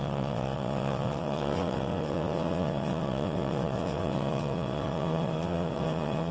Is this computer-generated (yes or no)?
yes